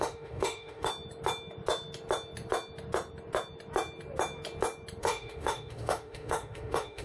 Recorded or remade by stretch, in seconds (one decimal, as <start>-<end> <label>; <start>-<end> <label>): 0.0-0.9 remade; 0.9-5.0 recorded; 5.0-7.0 remade

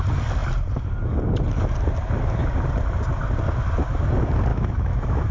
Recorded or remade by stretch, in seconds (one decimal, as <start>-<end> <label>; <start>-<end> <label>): 0.0-4.5 recorded; 4.5-5.3 remade

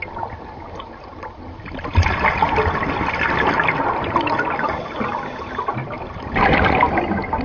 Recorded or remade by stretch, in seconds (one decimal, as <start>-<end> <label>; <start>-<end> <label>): 0.0-1.1 recorded; 1.1-3.9 remade; 3.9-5.8 recorded; 5.8-7.0 remade; 7.0-7.4 recorded

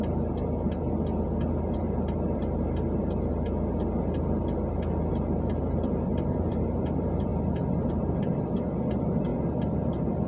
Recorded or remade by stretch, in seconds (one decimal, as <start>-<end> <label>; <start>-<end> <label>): 0.0-0.8 remade; 0.8-1.6 recorded; 1.6-3.3 remade; 3.3-5.1 recorded; 5.1-7.3 remade; 7.3-7.9 recorded; 7.9-9.3 remade; 9.3-9.8 recorded; 9.8-10.3 remade

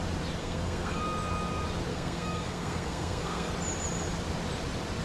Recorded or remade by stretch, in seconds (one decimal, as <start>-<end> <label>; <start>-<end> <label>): 0.0-0.4 recorded; 0.4-1.0 remade; 1.0-1.9 recorded; 1.9-3.5 remade; 3.5-5.0 recorded

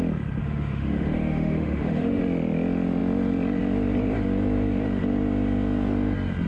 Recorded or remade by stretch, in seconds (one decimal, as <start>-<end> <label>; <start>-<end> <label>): 0.0-0.4 recorded; 0.4-2.2 remade; 2.2-6.5 recorded

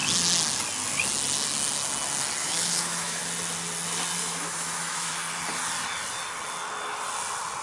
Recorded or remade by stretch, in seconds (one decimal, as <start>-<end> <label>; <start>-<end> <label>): 0.0-2.4 recorded; 2.4-3.2 remade; 3.2-4.2 recorded; 4.2-5.1 remade; 5.1-7.6 recorded